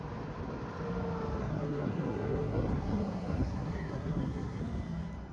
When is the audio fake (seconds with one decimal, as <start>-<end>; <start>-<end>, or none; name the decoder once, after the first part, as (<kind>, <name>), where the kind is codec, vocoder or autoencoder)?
1.4-4.6 (codec, SNAC)